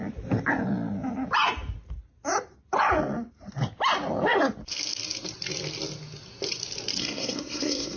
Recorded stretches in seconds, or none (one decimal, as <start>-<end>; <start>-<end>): 0.0-7.0